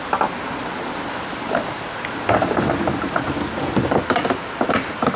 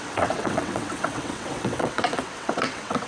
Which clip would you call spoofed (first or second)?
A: second